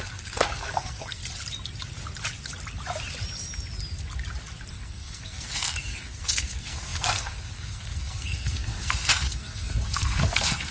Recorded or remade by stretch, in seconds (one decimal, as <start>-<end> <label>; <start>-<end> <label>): 0.0-1.2 remade; 1.2-4.7 recorded; 4.7-10.7 remade